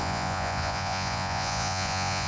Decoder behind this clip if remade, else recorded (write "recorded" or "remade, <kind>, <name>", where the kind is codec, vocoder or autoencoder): remade, vocoder, Vocos